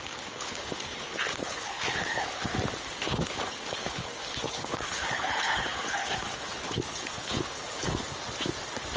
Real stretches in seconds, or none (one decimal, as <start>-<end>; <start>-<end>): 2.5-3.0; 8.0-9.0

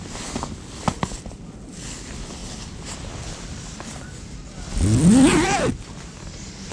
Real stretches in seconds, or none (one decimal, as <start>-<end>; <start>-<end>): 0.0-6.7

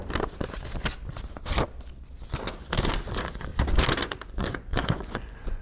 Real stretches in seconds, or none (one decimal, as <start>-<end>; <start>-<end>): 0.0-3.1; 3.5-4.0

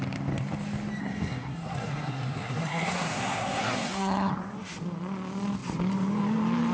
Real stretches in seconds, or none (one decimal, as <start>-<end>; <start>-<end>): 0.0-1.0; 4.3-6.7

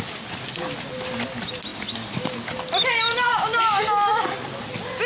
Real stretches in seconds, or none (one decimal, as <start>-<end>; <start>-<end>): 0.0-5.1